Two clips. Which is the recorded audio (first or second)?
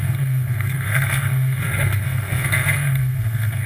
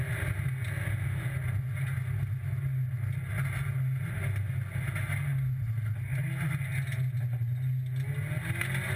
second